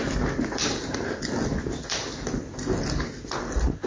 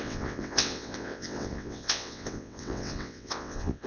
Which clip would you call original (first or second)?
first